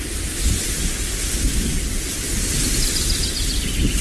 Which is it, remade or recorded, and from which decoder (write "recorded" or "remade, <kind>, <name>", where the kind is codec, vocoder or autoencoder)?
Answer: recorded